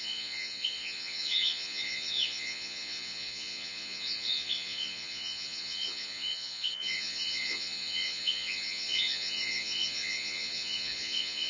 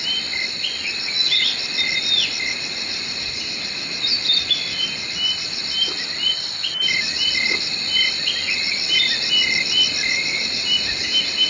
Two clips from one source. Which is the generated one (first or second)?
first